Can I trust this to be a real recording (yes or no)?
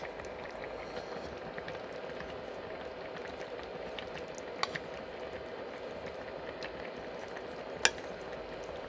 yes